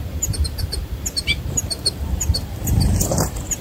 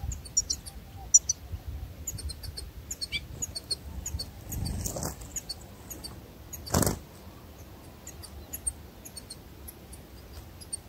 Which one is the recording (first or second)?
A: second